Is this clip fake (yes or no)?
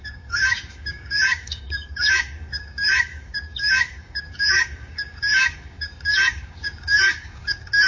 yes